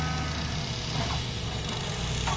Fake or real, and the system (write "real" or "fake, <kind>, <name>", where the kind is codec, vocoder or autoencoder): real